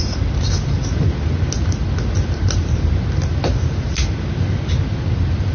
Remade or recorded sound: recorded